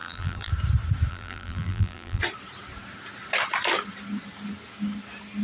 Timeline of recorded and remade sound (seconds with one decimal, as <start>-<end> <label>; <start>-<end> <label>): 0.0-0.5 remade; 0.5-1.1 recorded; 1.1-2.2 remade; 2.2-5.4 recorded